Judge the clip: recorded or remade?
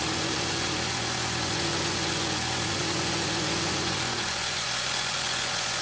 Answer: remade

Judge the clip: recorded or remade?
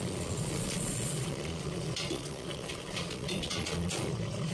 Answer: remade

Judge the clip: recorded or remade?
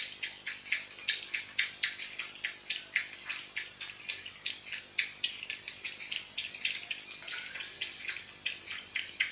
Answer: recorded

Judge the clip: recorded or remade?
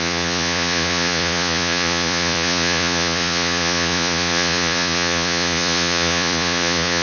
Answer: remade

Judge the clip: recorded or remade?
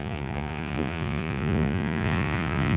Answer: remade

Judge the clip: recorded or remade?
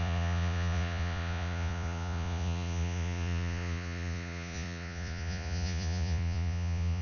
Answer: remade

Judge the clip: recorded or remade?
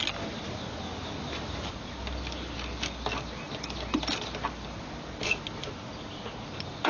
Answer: recorded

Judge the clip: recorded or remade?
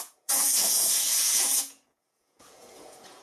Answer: remade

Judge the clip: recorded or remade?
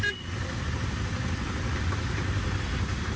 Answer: recorded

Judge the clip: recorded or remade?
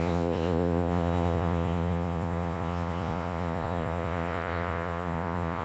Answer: remade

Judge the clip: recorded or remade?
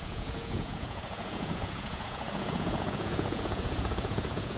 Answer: remade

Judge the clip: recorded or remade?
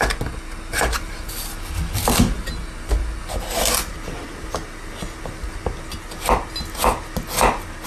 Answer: recorded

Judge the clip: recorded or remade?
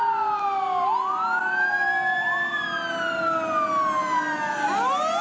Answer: recorded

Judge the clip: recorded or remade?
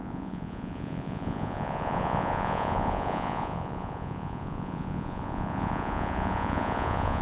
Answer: remade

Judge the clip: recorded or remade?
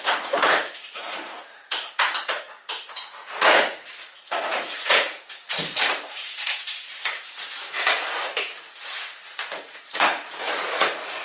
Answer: remade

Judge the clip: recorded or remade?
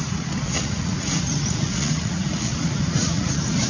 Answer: remade